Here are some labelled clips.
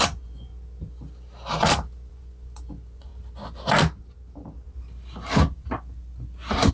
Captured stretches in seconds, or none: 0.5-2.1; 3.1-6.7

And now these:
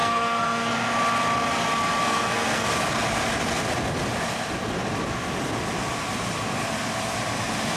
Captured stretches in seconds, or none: 0.7-2.0; 2.7-7.8